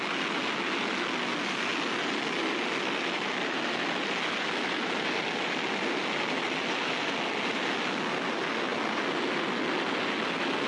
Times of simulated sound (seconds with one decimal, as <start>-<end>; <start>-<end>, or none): none